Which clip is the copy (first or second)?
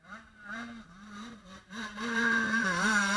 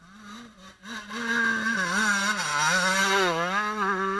first